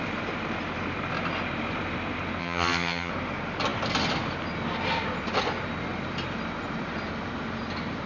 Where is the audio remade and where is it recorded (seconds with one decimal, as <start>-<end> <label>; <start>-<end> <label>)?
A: 0.0-2.4 recorded; 2.4-3.1 remade; 3.1-8.1 recorded